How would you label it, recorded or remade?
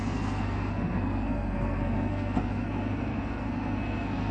remade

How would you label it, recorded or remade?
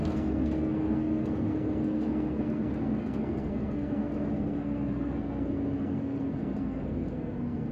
remade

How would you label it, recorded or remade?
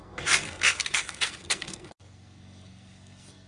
remade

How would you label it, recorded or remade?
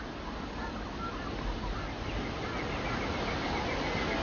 recorded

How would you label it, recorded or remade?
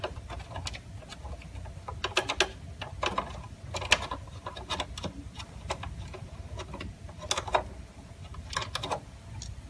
recorded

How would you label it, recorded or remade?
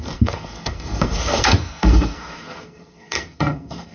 remade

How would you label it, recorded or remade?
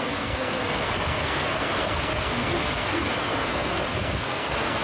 remade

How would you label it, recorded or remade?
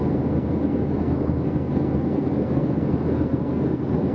remade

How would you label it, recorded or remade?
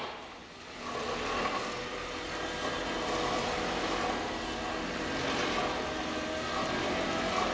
recorded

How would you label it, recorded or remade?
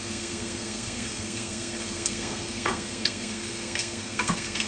remade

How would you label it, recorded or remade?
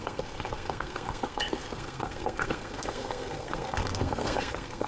remade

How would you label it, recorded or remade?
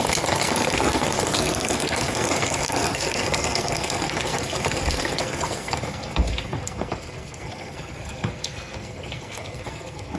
remade